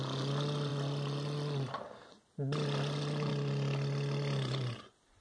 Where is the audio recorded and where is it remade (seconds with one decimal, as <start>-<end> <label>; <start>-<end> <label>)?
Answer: 0.0-5.2 recorded